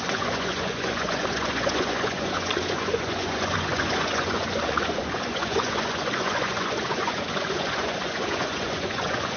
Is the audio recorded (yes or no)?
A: no